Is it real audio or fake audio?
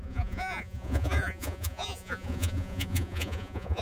fake